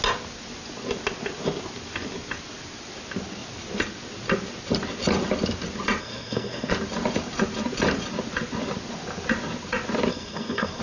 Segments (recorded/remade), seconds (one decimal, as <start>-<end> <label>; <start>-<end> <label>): 0.0-6.0 recorded; 6.0-6.7 remade; 6.7-10.1 recorded; 10.1-10.8 remade